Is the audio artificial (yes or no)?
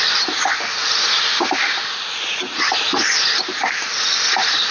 no